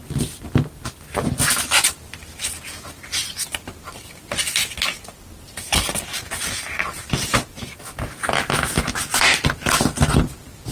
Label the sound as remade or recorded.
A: recorded